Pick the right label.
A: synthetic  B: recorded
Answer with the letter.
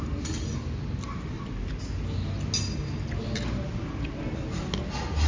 B